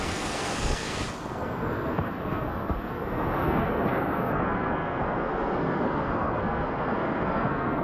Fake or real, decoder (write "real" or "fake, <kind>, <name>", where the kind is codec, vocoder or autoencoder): fake, codec, SNAC